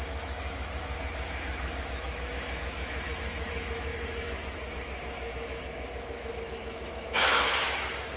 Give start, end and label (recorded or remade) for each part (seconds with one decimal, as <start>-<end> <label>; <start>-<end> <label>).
0.0-8.2 remade